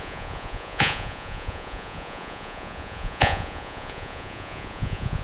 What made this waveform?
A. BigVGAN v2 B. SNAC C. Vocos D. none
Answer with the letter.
C